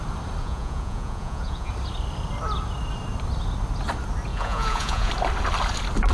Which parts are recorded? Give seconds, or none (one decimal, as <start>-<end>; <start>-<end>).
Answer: 0.0-0.4; 1.7-4.3; 5.1-6.1